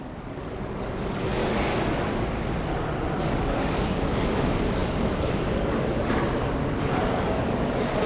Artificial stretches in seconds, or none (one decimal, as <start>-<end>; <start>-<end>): 0.0-1.4; 3.2-8.1